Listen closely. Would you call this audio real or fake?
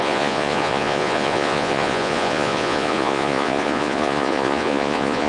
fake